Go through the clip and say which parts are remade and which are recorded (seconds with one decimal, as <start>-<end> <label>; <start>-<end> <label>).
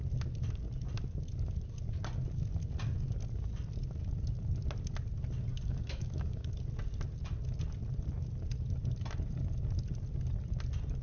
0.0-5.5 recorded; 5.5-6.5 remade; 6.5-11.0 recorded